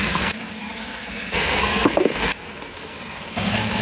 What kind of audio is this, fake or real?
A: fake